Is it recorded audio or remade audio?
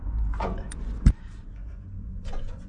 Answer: remade